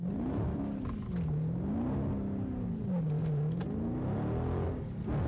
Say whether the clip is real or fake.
real